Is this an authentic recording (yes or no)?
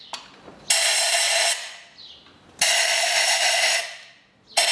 yes